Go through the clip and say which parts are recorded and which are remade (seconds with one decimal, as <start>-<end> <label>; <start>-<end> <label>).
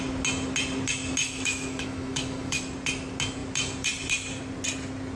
0.0-1.2 recorded; 1.2-2.6 remade; 2.6-5.2 recorded